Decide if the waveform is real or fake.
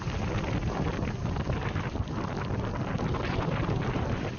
real